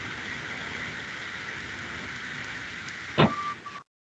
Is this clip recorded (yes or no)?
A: yes